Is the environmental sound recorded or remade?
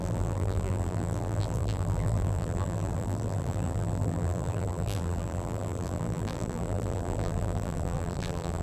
remade